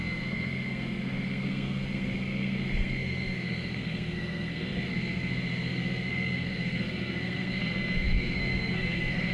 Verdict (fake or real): fake